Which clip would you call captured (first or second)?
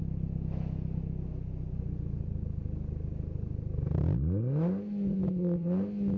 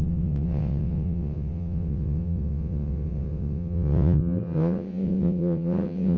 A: first